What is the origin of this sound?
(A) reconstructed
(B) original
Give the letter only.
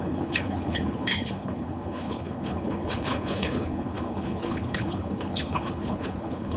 A